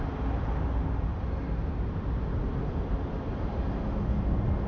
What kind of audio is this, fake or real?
real